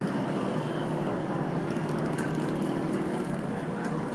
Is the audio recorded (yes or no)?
no